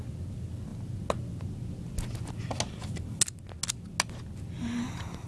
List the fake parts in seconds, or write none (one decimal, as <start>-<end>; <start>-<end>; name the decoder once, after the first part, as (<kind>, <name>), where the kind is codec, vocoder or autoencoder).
none